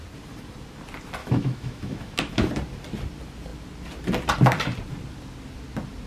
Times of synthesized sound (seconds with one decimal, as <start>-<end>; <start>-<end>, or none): 1.2-2.5